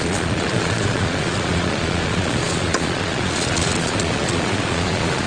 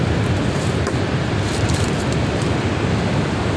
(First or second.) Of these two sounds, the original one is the second